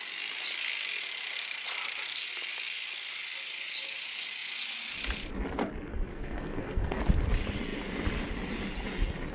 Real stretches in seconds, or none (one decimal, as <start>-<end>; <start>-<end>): 0.0-5.9; 7.0-9.3